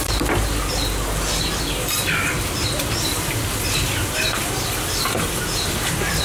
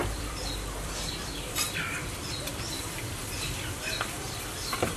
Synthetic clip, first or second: second